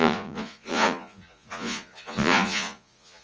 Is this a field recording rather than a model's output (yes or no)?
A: no